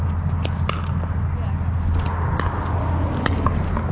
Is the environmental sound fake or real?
real